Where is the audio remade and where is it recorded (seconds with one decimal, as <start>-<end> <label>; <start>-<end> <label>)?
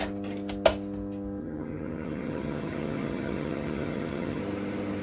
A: 0.0-1.4 recorded; 1.4-4.4 remade; 4.4-5.0 recorded